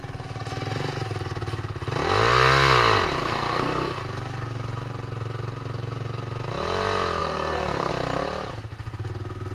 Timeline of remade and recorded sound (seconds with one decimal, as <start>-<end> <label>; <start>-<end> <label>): 0.0-3.2 recorded; 3.2-4.0 remade; 4.0-7.2 recorded; 7.2-7.9 remade; 7.9-9.5 recorded